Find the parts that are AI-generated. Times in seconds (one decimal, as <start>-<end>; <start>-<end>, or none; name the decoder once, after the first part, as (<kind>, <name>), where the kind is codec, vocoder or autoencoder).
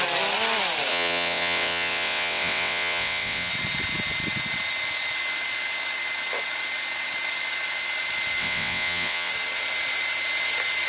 0.9-3.5 (vocoder, WaveNeXt); 8.4-9.3